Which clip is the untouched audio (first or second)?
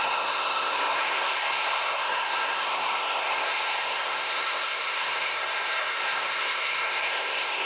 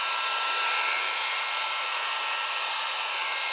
second